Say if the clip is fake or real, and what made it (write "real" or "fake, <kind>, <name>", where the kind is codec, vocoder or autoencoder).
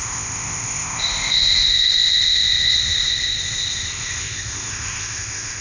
fake, codec, ZipCodec